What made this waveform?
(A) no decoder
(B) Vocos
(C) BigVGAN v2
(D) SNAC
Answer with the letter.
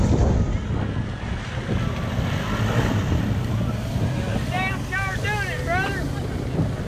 A